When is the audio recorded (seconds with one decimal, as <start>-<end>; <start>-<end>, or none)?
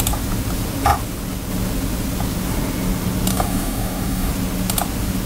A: 0.0-3.3; 4.3-5.3